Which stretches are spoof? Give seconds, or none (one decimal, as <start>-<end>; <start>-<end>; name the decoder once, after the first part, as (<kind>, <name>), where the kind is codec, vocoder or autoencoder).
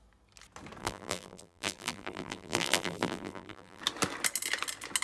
0.8-3.8 (vocoder, BigVGAN v2)